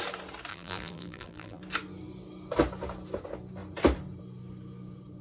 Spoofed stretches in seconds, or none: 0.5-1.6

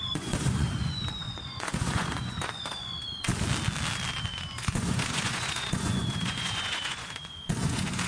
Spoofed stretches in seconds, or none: 0.0-3.3; 4.3-8.1

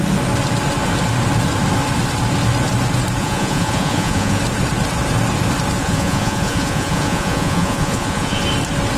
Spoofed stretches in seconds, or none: 3.2-4.4; 5.8-8.4

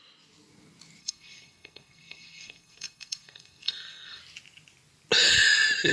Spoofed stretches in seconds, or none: 1.0-4.2

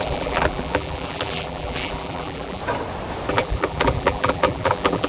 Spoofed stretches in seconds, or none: 0.0-2.6; 3.3-5.1

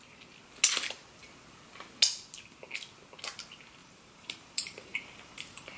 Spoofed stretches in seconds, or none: 3.8-5.8